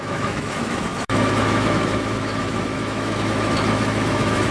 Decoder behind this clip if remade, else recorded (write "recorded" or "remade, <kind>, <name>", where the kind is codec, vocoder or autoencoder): remade, autoencoder, DAC-VAE